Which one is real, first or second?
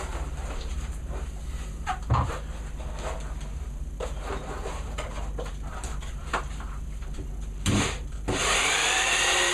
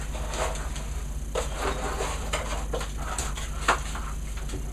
second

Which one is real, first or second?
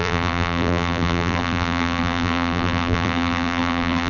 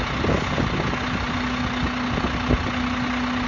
second